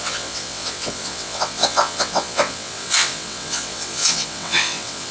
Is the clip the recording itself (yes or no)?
no